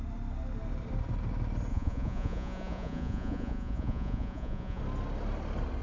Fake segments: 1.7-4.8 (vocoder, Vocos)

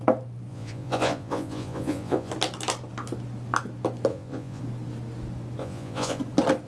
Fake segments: 0.5-2.3 (vocoder, Vocos); 4.1-4.6; 5.6-6.2

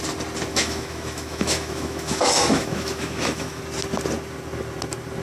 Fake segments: 0.5-3.6 (autoencoder, DAC-VAE)

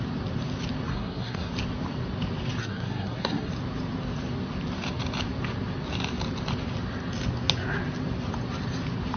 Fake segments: 0.9-1.5 (codec, SNAC); 2.6-3.5

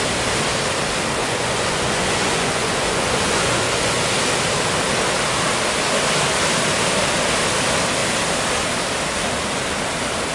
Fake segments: 1.2-4.1 (vocoder, Vocos)

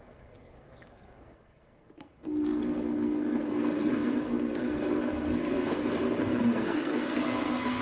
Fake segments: 0.0-7.8 (codec, SNAC)

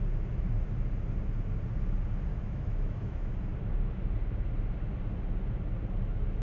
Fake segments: 2.3-3.3 (autoencoder, DAC-VAE)